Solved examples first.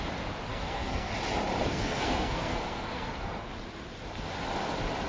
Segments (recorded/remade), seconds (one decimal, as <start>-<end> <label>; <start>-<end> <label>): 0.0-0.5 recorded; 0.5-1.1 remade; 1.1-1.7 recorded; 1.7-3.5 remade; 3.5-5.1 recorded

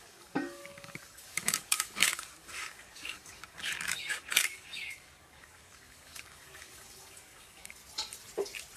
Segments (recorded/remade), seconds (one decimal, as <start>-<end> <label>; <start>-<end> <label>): 0.0-7.8 remade; 7.8-8.8 recorded

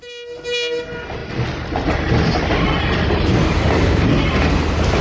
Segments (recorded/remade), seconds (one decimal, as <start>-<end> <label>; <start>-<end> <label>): 0.0-5.0 recorded

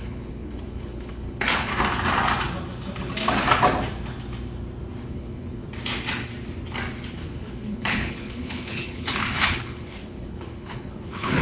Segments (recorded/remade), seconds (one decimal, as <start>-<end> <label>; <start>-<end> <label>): 0.0-1.7 remade; 1.7-5.0 recorded; 5.0-5.6 remade; 5.6-7.1 recorded; 7.1-11.4 remade